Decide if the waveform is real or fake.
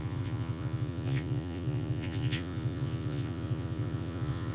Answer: fake